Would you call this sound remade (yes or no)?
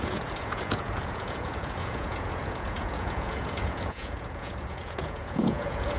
yes